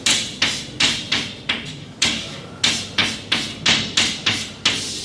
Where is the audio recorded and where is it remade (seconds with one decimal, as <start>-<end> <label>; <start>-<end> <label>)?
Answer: 0.0-1.7 recorded; 1.7-2.5 remade; 2.5-5.0 recorded